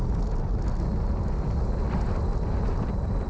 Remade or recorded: recorded